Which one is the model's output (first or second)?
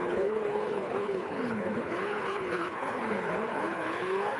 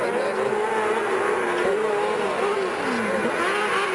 first